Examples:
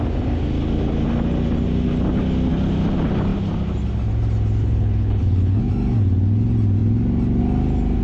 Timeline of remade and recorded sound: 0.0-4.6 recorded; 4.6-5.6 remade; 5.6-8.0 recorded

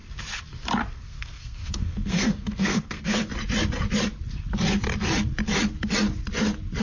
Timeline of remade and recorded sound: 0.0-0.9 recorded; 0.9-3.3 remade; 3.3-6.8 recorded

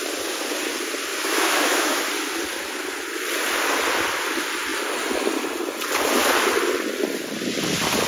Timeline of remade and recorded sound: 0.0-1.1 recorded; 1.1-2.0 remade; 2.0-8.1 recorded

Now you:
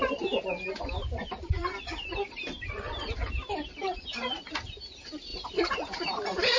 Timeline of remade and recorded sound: 0.0-6.6 remade